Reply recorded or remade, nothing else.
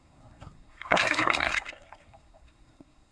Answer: remade